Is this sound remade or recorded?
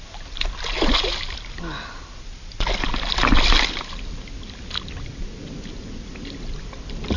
recorded